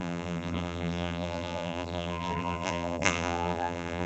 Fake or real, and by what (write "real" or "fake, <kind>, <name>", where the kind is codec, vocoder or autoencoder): fake, vocoder, BigVGAN v2